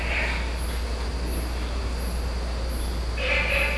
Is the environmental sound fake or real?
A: real